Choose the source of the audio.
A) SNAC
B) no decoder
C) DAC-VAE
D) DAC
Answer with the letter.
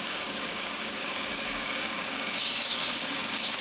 D